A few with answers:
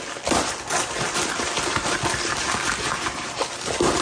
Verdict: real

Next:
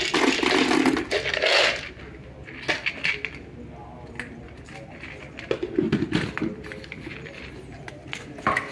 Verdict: real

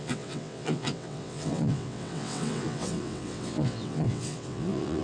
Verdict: fake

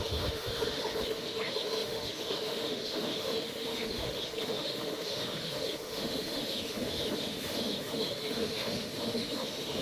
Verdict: fake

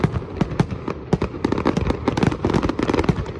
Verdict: real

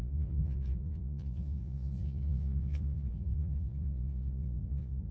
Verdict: fake